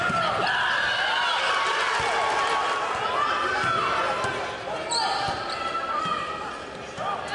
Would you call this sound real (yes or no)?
yes